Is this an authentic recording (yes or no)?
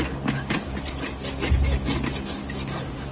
yes